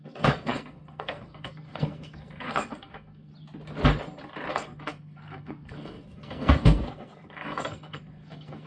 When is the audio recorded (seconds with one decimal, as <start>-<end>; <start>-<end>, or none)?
3.3-4.5